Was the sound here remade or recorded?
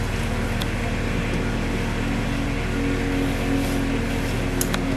recorded